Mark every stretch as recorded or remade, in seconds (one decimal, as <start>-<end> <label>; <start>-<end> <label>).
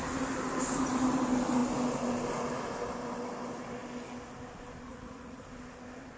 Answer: 0.0-4.9 recorded; 4.9-5.4 remade; 5.4-6.2 recorded